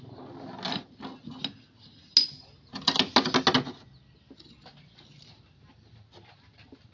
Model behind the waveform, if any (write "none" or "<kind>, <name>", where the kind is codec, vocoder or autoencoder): none